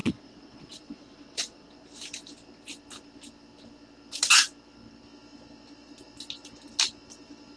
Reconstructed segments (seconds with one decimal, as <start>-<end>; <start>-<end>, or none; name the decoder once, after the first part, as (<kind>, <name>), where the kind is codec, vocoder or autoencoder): 0.0-1.7 (vocoder, WaveNeXt)